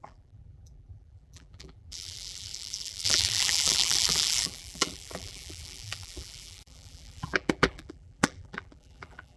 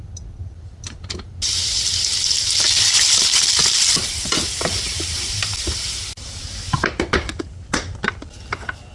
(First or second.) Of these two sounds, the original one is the second